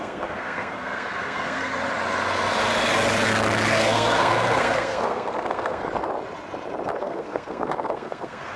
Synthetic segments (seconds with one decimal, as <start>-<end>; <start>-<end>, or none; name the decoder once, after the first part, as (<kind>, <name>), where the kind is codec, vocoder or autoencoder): 0.0-1.7 (codec, SNAC); 3.7-5.8; 7.0-8.6